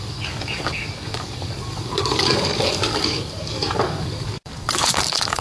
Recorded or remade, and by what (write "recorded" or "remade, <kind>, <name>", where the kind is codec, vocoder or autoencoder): remade, codec, DAC